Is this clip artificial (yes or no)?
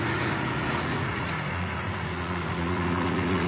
yes